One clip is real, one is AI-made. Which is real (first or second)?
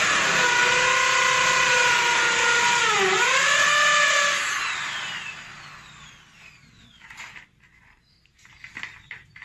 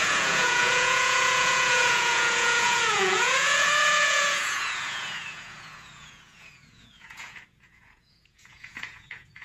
first